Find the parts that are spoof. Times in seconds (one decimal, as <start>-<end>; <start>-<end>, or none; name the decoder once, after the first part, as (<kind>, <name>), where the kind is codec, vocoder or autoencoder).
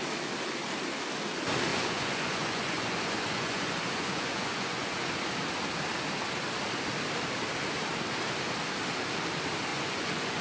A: 1.7-5.1 (vocoder, Vocos); 9.7-10.4